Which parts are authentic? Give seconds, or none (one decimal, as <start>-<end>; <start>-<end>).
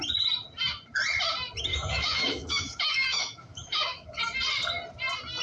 0.0-1.7; 4.2-5.4